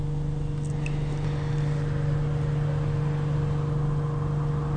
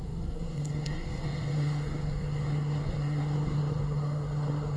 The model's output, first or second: second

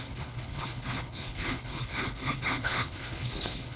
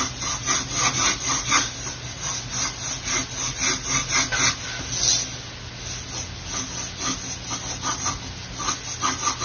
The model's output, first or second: first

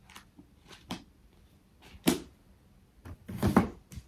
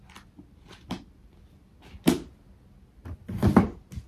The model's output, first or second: first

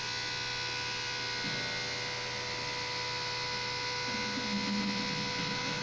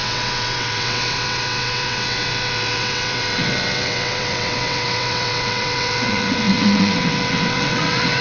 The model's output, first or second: second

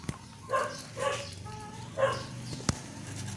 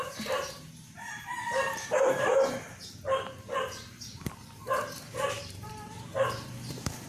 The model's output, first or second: second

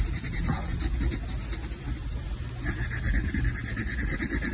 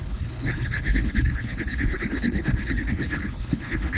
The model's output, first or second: second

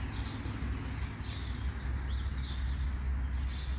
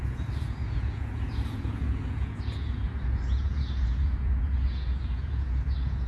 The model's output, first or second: second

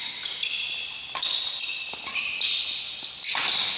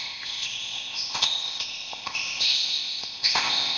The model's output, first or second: second